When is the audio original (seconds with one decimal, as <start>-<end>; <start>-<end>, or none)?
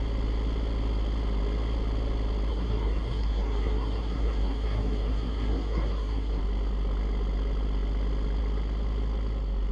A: 0.0-2.5; 6.4-9.7